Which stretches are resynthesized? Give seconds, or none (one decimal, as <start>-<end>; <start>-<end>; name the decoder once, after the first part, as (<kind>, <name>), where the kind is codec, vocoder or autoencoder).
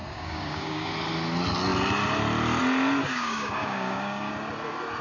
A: 0.0-0.9 (codec, DAC); 3.0-4.3